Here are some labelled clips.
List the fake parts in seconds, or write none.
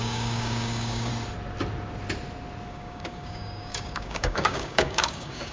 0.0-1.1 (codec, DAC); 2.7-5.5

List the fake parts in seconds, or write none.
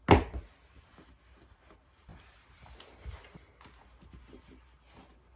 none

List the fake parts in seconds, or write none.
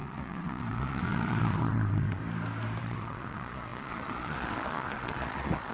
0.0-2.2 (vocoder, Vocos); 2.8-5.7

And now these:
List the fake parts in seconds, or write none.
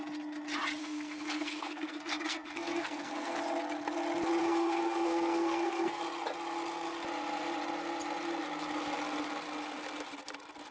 0.8-3.4 (codec, SNAC); 4.4-6.0